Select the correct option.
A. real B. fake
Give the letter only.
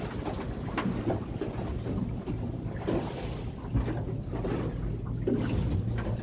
A